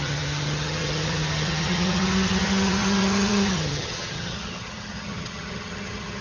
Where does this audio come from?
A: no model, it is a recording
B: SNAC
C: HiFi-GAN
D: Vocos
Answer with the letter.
C